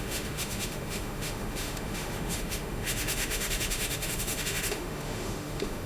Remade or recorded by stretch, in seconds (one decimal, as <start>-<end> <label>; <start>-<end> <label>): 0.0-5.9 remade

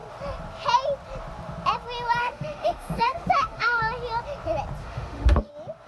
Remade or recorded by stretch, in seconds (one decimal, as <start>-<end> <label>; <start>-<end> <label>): 0.0-2.2 recorded; 2.2-3.8 remade; 3.8-4.8 recorded; 4.8-5.5 remade; 5.5-5.9 recorded

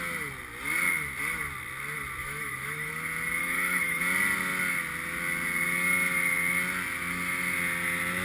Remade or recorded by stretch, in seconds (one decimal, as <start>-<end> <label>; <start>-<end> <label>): 0.0-2.2 recorded; 2.2-2.9 remade; 2.9-3.4 recorded; 3.4-4.0 remade; 4.0-8.2 recorded

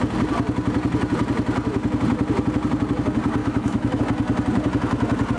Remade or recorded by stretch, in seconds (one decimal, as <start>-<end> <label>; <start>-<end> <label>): 0.0-3.4 recorded; 3.4-4.0 remade; 4.0-5.4 recorded

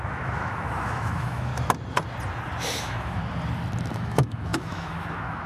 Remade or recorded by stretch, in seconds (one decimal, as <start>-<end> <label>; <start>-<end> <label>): 0.0-1.5 remade; 1.5-2.8 recorded; 2.8-3.2 remade; 3.2-3.9 recorded; 3.9-5.5 remade

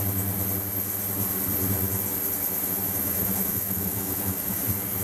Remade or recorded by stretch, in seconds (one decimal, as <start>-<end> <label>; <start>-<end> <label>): 0.0-3.0 recorded; 3.0-4.6 remade; 4.6-5.0 recorded

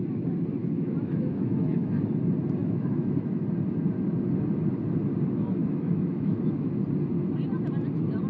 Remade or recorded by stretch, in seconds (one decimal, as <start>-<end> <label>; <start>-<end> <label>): 0.0-0.6 recorded; 0.6-1.9 remade; 1.9-2.6 recorded; 2.6-3.4 remade; 3.4-5.6 recorded; 5.6-6.7 remade; 6.7-8.3 recorded